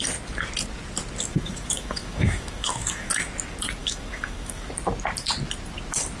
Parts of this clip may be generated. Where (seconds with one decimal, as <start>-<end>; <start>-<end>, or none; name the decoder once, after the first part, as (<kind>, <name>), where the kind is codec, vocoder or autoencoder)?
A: 1.3-3.1 (autoencoder, DAC-VAE); 3.8-4.7